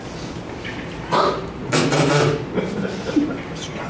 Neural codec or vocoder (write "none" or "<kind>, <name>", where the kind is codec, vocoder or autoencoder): none